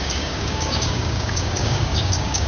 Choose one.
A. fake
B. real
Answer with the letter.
A